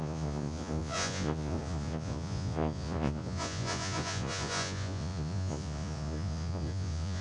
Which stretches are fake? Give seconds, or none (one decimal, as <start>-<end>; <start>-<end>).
0.0-7.2